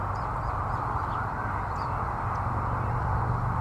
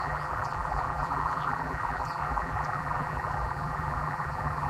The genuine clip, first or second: first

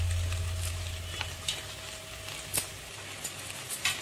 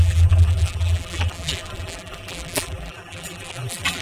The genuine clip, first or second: first